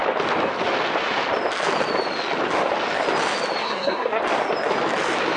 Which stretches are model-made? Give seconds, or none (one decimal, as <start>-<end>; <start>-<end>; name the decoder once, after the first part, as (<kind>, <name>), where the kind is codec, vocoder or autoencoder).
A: 3.6-4.2 (codec, SNAC)